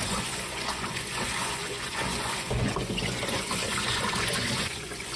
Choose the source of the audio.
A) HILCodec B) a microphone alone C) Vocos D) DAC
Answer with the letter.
C